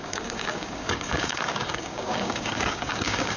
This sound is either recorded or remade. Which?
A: remade